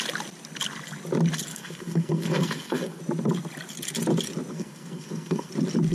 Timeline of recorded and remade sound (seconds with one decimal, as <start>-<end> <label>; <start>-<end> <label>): 0.0-1.5 recorded; 1.5-3.0 remade; 3.0-4.5 recorded; 4.5-5.5 remade; 5.5-5.9 recorded